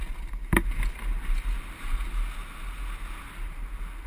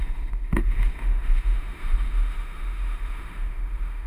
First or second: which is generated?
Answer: second